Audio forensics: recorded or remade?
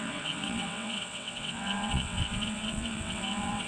remade